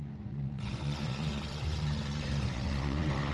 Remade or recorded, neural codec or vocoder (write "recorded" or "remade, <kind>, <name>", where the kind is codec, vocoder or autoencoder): remade, vocoder, Vocos